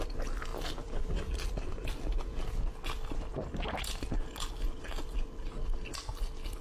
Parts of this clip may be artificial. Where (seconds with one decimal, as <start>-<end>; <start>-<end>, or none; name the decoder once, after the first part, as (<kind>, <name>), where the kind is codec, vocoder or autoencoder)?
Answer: none

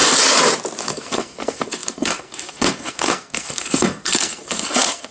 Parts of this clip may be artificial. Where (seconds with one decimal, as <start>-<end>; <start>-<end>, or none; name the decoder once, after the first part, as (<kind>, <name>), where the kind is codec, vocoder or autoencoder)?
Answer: 0.8-5.1 (codec, SNAC)

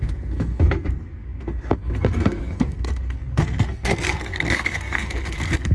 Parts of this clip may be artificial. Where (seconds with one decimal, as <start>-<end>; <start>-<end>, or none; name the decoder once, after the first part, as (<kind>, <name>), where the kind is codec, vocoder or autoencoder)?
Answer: 0.0-5.7 (codec, SNAC)

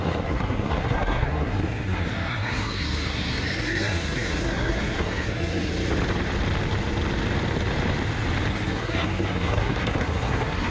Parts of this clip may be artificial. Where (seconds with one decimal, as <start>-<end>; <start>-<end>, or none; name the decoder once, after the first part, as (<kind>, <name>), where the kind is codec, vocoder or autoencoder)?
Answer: 0.0-5.7 (codec, SNAC); 8.5-10.7

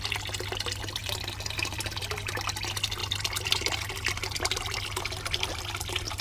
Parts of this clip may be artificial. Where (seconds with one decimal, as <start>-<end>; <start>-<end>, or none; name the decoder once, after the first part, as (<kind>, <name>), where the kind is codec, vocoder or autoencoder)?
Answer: none